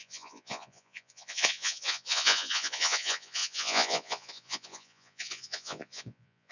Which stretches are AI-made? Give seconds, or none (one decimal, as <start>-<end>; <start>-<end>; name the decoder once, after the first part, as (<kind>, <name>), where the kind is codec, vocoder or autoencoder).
0.0-6.5 (vocoder, Vocos)